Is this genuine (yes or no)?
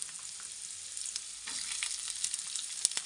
yes